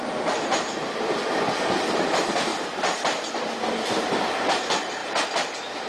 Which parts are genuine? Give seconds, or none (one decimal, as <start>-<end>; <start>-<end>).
0.0-2.5; 4.2-5.0